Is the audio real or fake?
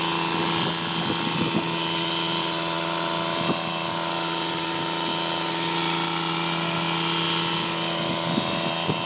real